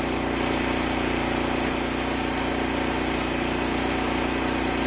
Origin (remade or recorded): remade